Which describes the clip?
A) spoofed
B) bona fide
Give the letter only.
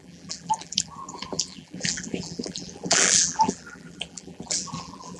A